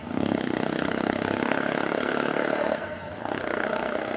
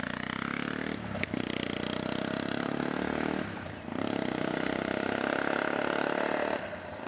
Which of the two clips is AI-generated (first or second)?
first